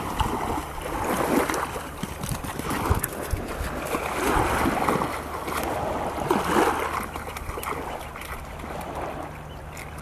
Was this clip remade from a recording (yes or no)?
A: no